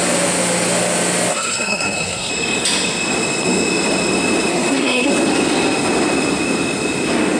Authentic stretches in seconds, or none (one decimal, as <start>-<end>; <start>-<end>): 0.0-1.3; 2.3-4.5; 5.1-7.4